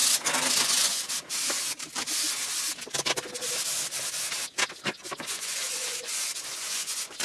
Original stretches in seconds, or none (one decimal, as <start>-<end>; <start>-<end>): 0.0-0.6; 1.0-5.3

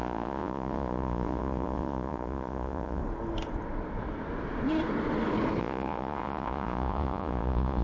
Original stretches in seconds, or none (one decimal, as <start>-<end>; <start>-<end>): 3.0-5.6